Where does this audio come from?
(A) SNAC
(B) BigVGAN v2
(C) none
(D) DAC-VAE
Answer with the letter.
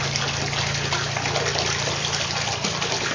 C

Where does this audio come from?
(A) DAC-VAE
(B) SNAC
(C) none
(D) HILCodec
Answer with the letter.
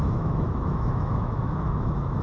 A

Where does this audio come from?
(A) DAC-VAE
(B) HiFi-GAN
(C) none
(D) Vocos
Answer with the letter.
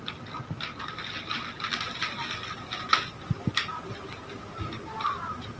C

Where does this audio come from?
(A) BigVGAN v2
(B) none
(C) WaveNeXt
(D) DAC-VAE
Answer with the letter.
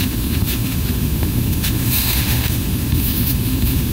D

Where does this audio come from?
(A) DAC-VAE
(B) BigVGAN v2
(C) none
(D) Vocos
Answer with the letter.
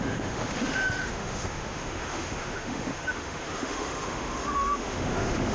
A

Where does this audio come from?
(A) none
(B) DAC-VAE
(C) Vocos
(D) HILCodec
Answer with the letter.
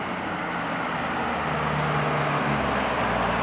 A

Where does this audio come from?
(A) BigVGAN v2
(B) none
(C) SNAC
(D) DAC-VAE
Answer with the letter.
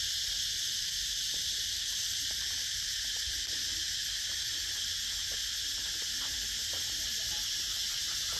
B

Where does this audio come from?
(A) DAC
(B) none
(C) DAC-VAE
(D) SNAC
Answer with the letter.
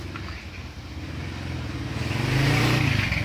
B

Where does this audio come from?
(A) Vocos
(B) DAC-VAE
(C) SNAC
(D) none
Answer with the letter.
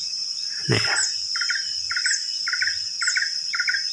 D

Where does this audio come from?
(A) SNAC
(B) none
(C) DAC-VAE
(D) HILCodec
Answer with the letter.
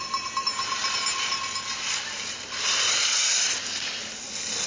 B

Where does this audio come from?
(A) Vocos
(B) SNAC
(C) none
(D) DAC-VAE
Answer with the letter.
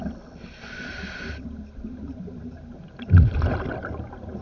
C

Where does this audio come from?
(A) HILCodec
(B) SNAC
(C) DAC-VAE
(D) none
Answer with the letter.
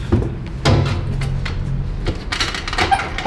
D